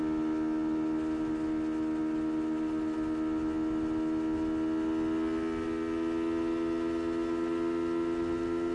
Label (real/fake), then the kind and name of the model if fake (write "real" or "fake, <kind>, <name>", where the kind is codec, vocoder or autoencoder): real